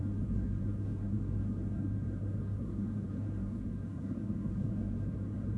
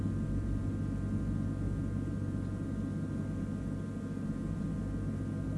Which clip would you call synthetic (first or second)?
first